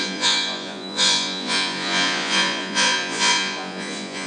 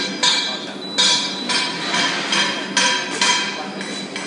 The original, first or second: second